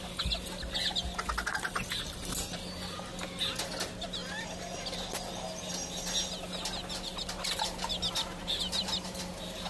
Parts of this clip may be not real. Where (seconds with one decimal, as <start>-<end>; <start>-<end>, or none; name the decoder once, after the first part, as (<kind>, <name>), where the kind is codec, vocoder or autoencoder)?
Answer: none